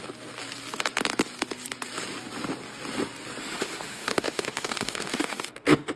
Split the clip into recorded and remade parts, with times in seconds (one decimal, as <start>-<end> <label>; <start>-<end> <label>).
0.0-3.4 recorded; 3.4-6.0 remade